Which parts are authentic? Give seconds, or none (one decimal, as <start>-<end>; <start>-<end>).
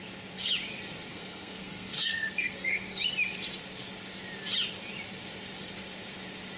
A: 0.0-1.1; 3.0-6.6